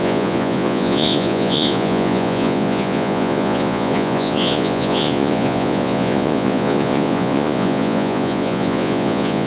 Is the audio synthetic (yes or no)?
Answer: yes